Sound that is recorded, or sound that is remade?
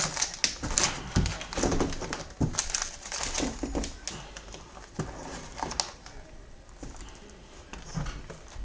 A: recorded